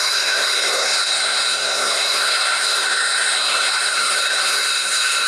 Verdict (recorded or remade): remade